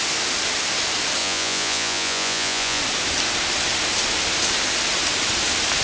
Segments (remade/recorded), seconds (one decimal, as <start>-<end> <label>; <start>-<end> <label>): 0.0-1.2 recorded; 1.2-2.8 remade; 2.8-5.8 recorded